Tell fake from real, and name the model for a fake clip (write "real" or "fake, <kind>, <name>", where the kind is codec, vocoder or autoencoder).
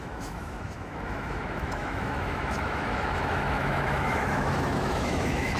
fake, autoencoder, DAC-VAE